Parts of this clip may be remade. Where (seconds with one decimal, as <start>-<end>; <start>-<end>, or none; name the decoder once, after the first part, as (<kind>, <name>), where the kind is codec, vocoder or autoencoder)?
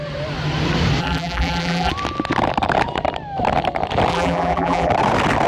1.0-1.9 (vocoder, BigVGAN v2); 4.1-4.9